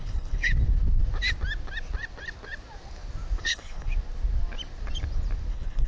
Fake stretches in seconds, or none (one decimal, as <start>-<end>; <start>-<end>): 0.0-0.5; 3.4-3.9; 5.5-5.9